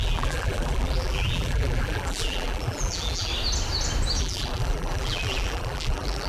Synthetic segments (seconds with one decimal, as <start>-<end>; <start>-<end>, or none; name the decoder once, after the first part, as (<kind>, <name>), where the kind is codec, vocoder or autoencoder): 0.0-3.3 (vocoder, BigVGAN v2); 4.2-6.3